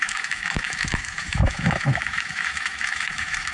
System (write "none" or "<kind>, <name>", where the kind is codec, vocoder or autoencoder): autoencoder, DAC-VAE